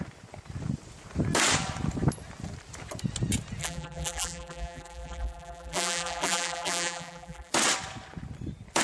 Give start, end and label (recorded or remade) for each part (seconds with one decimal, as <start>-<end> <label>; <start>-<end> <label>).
0.0-3.6 recorded; 3.6-7.5 remade; 7.5-8.8 recorded